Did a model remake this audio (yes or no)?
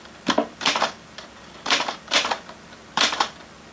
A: yes